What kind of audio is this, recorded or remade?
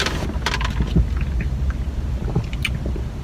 recorded